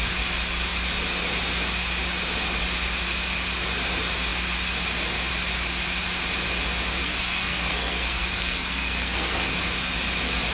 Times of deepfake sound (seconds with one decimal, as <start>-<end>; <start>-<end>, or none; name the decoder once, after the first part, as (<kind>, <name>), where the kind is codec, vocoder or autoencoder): 7.0-9.5 (codec, SNAC)